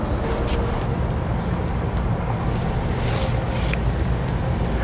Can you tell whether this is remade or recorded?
recorded